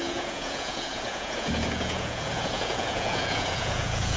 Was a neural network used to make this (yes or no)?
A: yes